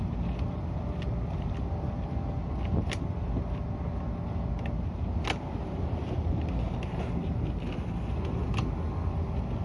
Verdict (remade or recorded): recorded